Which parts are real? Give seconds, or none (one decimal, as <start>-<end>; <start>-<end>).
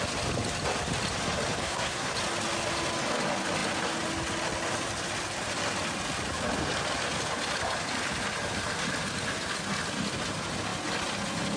0.0-1.6; 2.1-11.6